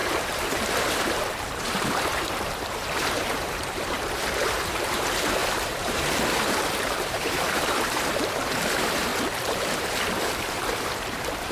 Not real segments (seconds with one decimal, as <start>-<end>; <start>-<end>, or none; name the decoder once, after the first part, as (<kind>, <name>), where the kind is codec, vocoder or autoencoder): 0.0-9.1 (vocoder, BigVGAN v2); 10.5-11.5